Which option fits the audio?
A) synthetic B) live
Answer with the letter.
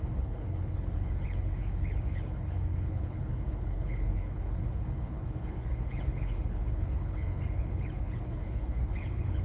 A